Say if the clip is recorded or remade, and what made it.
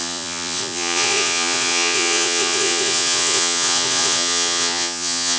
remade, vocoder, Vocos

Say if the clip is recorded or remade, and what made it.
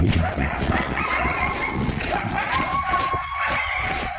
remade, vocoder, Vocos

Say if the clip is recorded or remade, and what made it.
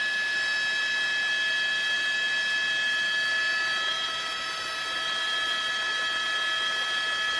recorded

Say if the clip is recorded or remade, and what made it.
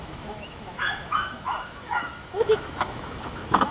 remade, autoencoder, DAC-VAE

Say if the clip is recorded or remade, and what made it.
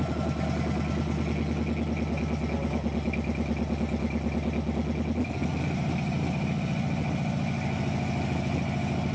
recorded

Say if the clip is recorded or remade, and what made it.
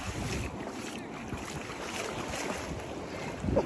recorded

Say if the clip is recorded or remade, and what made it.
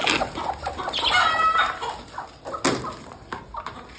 recorded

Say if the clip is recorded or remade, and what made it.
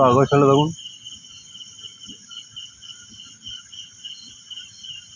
recorded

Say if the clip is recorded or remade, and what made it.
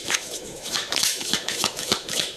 remade, autoencoder, DAC-VAE